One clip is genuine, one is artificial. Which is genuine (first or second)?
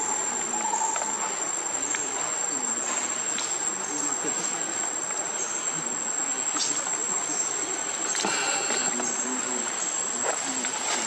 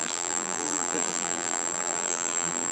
first